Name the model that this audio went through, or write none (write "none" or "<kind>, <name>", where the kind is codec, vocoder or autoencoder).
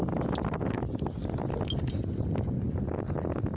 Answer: none